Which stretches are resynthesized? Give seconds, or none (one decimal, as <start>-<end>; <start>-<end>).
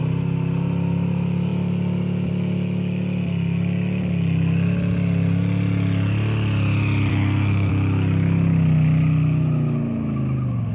7.1-7.7